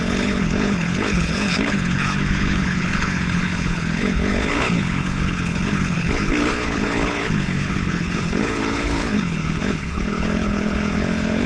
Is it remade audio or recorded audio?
remade